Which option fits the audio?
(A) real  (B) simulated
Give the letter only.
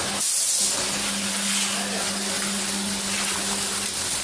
A